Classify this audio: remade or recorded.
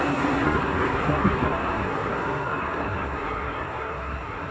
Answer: remade